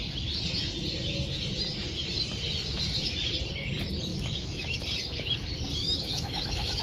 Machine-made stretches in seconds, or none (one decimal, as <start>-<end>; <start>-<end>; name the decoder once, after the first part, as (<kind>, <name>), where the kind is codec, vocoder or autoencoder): 4.1-4.8 (autoencoder, DAC-VAE); 5.8-6.8